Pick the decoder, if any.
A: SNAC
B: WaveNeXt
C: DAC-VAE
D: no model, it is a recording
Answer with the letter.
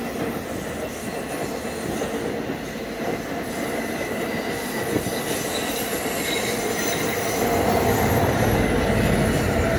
D